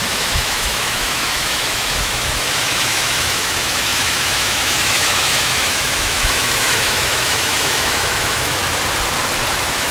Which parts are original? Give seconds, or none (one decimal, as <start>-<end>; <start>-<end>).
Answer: 8.6-9.5